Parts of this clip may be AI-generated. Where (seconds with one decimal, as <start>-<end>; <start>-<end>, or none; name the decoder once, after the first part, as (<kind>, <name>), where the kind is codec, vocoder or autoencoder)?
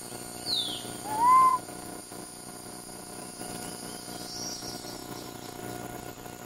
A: 1.5-3.4 (vocoder, Vocos); 5.0-5.6